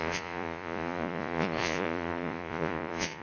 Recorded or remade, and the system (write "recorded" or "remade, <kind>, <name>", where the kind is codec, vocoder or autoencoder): remade, vocoder, Vocos